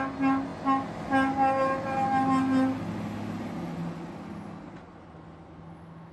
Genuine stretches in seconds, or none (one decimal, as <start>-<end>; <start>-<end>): 0.0-6.1